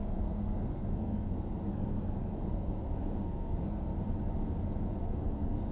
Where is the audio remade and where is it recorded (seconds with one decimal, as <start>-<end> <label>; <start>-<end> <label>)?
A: 0.0-3.9 remade; 3.9-5.0 recorded; 5.0-5.7 remade